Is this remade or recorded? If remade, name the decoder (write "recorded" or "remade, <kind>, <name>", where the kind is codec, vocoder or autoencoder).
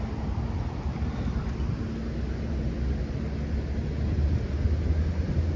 recorded